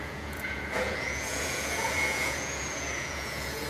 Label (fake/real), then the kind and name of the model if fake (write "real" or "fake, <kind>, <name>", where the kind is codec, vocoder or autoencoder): fake, vocoder, Vocos